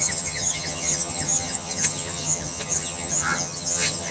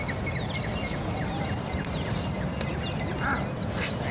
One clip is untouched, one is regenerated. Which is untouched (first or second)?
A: second